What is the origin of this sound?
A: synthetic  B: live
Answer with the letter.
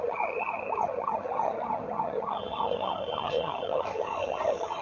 A